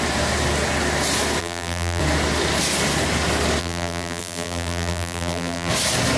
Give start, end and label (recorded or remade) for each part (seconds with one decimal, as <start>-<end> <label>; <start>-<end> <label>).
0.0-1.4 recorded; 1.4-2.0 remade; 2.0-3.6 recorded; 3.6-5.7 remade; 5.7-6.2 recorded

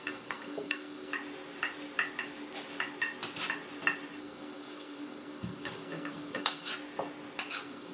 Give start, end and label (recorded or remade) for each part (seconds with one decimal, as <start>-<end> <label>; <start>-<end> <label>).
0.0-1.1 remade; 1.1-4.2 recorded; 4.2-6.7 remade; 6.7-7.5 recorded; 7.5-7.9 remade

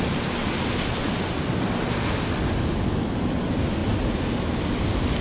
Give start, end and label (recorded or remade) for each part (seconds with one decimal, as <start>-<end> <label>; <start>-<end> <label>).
0.0-5.2 recorded